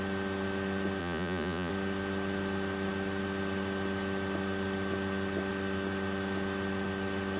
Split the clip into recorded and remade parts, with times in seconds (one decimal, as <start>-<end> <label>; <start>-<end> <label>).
0.0-1.0 recorded; 1.0-1.7 remade; 1.7-7.4 recorded